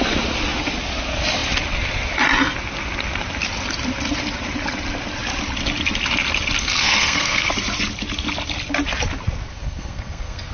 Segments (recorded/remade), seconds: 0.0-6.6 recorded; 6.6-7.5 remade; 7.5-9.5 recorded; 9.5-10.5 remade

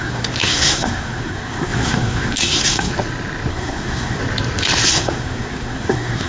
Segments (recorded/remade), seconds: 0.0-2.9 remade; 2.9-3.5 recorded; 3.5-4.2 remade; 4.2-4.9 recorded; 4.9-6.3 remade

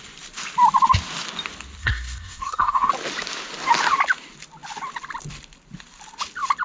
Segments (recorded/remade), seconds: 0.0-1.8 recorded; 1.8-2.9 remade; 2.9-6.6 recorded

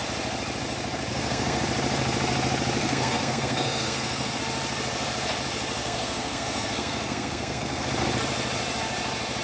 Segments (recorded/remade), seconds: 0.0-1.1 recorded; 1.1-1.6 remade; 1.6-2.8 recorded; 2.8-4.4 remade; 4.4-5.8 recorded; 5.8-7.9 remade; 7.9-9.4 recorded